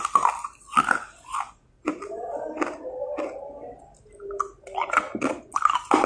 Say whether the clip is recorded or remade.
recorded